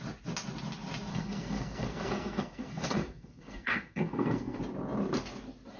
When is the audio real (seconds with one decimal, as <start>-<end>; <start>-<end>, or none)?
0.0-1.1; 4.6-5.8